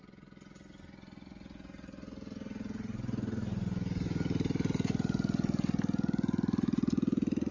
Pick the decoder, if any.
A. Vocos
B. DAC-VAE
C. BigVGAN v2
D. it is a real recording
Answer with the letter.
D